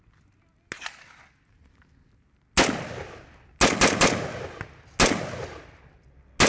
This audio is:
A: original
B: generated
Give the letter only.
A